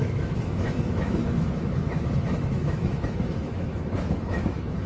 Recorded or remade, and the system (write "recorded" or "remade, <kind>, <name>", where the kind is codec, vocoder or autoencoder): remade, autoencoder, DAC-VAE